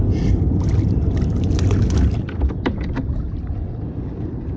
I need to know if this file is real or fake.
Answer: real